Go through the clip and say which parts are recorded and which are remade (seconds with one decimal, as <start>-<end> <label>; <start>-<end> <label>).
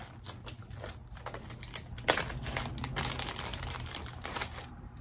0.0-3.5 recorded; 3.5-5.0 remade